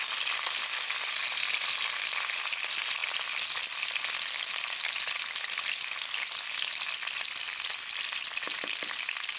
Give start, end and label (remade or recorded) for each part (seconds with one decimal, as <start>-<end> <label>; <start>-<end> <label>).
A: 0.0-9.4 recorded